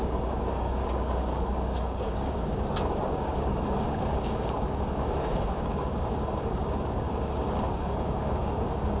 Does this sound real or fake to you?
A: fake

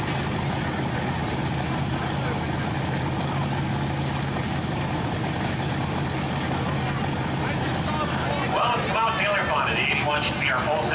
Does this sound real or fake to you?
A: real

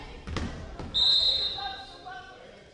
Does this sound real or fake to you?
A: real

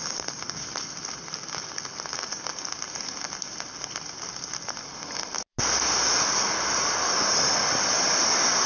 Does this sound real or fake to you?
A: real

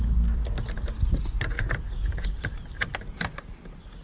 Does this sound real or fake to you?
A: real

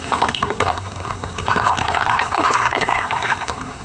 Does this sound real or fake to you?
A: fake